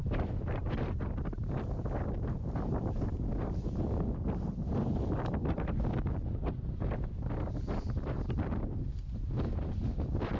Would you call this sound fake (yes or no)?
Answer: no